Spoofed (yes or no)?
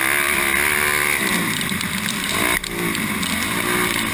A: no